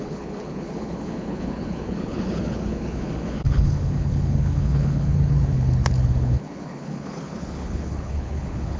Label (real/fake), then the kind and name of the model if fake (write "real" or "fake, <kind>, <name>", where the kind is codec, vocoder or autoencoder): fake, codec, HILCodec